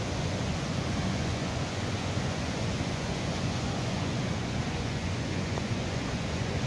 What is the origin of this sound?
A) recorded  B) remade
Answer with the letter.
B